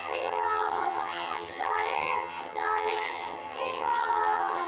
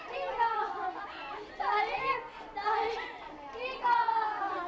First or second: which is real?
second